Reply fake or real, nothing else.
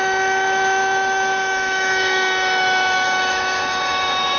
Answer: fake